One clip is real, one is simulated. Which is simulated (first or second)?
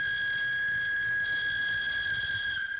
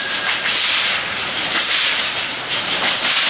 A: second